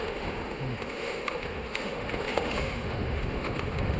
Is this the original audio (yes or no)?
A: no